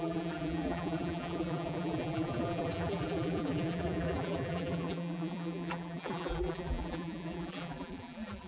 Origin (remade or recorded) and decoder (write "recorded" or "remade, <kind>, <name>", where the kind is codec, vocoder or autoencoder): remade, vocoder, BigVGAN v2